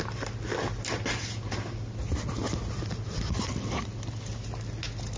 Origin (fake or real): real